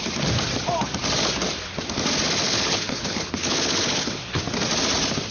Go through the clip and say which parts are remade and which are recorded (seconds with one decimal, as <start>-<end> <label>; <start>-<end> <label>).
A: 0.0-2.4 recorded; 2.4-4.2 remade; 4.2-5.3 recorded